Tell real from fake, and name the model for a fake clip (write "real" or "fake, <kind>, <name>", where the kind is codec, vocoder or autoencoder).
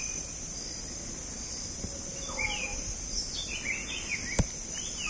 real